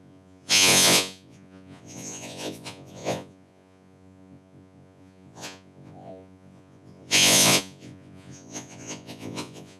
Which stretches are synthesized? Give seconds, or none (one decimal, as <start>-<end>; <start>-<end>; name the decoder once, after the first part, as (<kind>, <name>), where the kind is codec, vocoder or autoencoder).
0.0-9.8 (vocoder, Vocos)